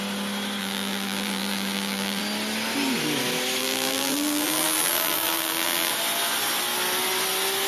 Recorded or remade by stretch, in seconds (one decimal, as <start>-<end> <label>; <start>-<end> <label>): 0.0-0.6 recorded; 0.6-2.2 remade; 2.2-3.6 recorded; 3.6-5.9 remade; 5.9-7.7 recorded